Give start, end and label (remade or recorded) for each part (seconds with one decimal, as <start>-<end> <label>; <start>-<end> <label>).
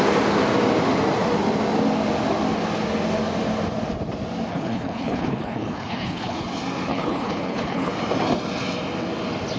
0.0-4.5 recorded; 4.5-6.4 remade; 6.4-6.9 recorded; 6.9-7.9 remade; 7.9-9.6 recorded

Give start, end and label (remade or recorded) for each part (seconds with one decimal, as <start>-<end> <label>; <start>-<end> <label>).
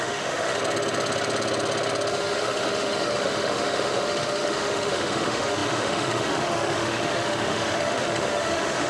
0.0-0.6 remade; 0.6-2.1 recorded; 2.1-8.9 remade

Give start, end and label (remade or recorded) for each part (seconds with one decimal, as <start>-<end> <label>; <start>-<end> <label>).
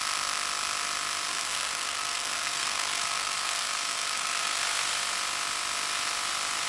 0.0-1.3 recorded; 1.3-4.6 remade; 4.6-6.7 recorded